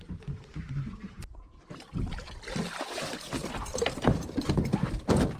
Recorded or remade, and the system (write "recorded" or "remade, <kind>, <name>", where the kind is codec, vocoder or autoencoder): recorded